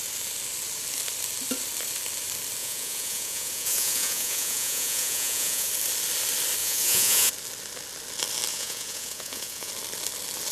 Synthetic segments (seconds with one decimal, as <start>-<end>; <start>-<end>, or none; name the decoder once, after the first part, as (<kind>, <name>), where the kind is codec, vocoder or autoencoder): 2.6-5.7 (vocoder, Vocos); 6.6-7.3; 8.5-9.7